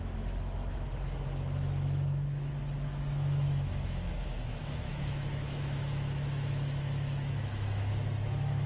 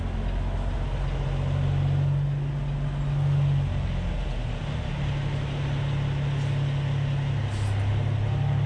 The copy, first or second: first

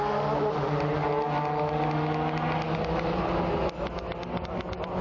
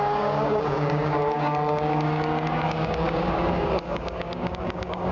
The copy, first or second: second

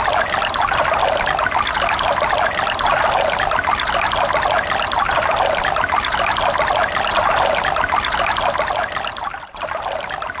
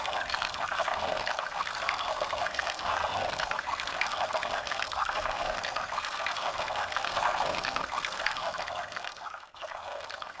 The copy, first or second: second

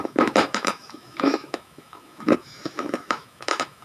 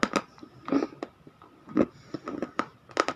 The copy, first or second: first